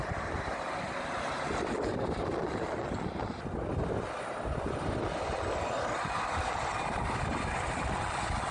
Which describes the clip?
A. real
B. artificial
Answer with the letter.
A